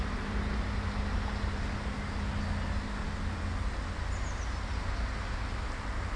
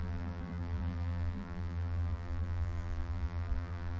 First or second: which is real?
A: first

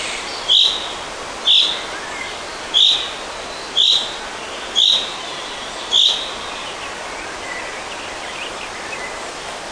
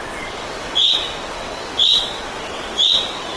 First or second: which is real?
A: first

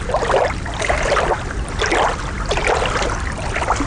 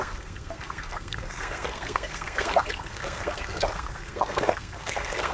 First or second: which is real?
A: first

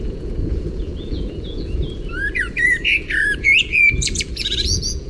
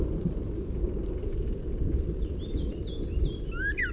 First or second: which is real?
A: second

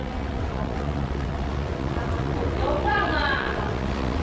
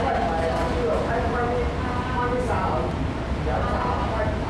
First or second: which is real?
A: second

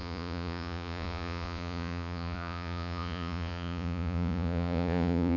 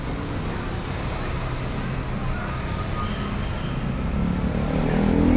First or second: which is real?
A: second